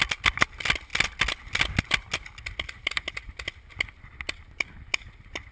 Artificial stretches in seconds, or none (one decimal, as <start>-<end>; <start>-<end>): none